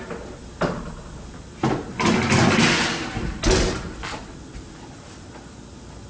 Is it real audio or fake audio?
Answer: real